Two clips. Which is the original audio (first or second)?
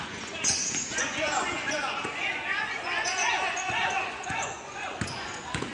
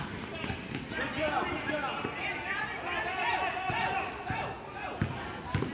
second